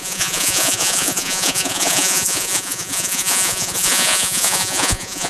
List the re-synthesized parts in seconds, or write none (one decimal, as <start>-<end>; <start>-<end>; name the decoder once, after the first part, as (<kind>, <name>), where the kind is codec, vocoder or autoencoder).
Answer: 0.0-5.3 (vocoder, Vocos)